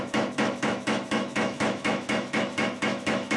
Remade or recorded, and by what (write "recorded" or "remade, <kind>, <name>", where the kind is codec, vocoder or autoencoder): remade, autoencoder, DAC-VAE